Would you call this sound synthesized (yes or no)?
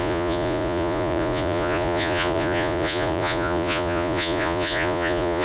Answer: yes